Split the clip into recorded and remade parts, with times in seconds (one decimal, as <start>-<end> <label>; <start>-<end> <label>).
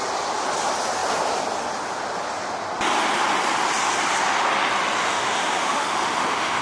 0.0-5.0 recorded; 5.0-6.6 remade